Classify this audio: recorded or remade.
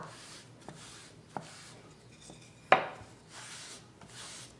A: recorded